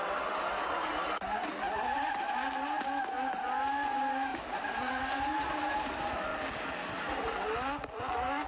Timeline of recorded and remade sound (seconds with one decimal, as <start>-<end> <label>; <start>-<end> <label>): 0.0-8.5 recorded